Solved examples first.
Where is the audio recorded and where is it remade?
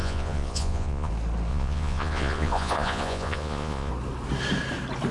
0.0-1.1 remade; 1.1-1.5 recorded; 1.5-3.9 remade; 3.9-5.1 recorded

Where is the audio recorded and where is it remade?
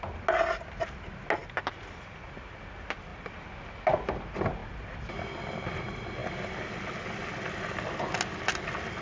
0.0-9.0 recorded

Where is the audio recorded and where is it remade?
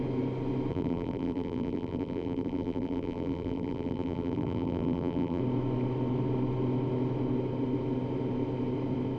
0.0-0.7 recorded; 0.7-5.4 remade; 5.4-9.2 recorded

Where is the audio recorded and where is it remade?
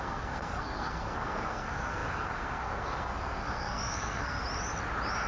0.0-4.4 remade; 4.4-5.3 recorded